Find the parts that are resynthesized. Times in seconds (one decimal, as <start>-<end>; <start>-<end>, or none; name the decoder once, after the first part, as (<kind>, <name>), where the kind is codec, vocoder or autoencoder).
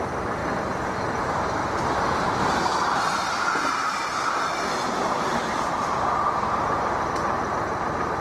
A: 0.0-0.4 (vocoder, BigVGAN v2); 1.2-8.2